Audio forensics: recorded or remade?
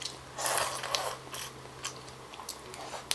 recorded